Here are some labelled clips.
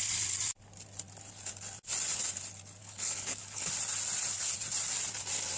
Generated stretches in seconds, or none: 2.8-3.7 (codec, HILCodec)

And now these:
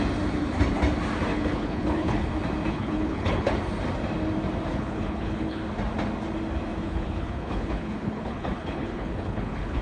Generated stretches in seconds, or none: 1.3-2.3 (codec, HILCodec); 2.7-3.5; 4.7-5.6; 6.8-9.8

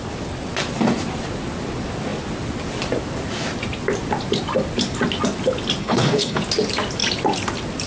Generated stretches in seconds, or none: 5.8-6.4 (codec, HILCodec)

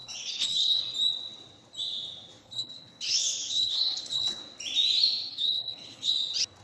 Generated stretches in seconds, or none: 0.0-0.8 (codec, HILCodec); 2.4-4.4; 5.3-6.1

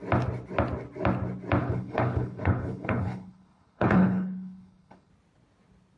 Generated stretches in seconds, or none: 1.6-5.1 (codec, HILCodec)

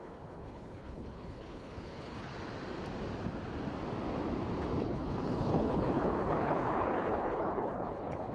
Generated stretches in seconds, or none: 0.0-2.3 (codec, HILCodec); 4.8-8.3

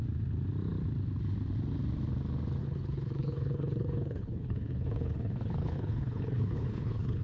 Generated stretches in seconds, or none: 2.6-7.2 (codec, HILCodec)